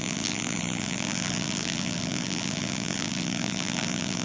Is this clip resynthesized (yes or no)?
yes